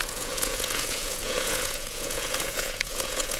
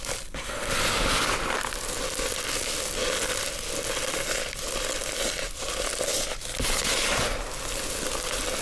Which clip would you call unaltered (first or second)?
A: second